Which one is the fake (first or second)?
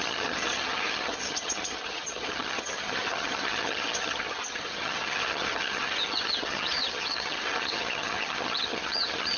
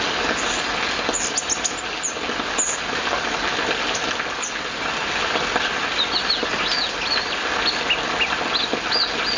first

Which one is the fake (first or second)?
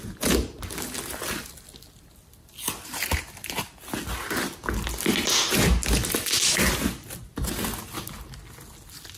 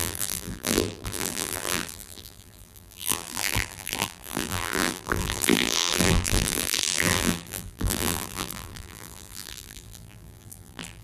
second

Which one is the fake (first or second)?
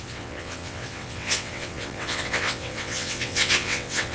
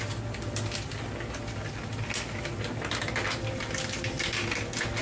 first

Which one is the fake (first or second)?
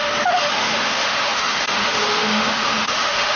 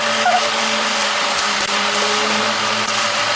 first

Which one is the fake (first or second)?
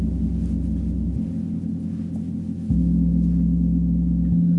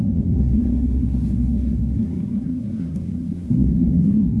second